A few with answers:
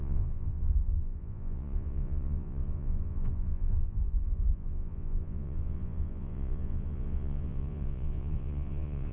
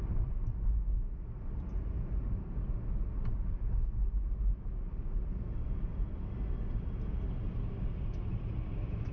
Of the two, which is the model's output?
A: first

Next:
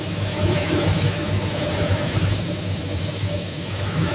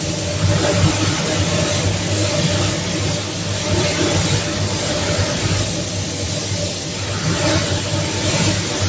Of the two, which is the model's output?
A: first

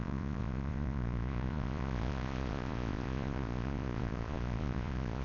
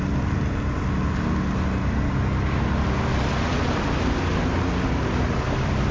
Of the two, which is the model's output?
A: first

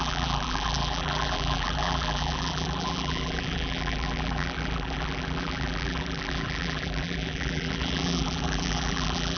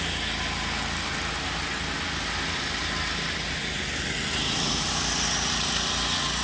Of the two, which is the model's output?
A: first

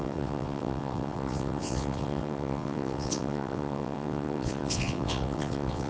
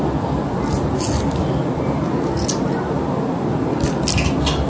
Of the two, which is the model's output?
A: first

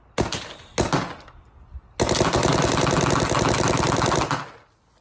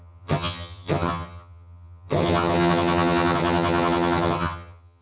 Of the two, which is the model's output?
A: second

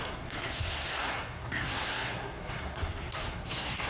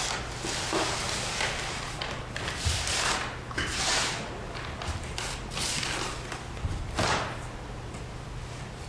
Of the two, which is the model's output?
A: first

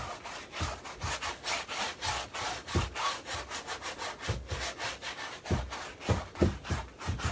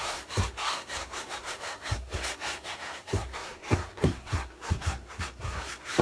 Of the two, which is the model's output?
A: second